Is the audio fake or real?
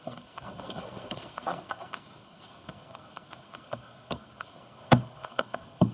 fake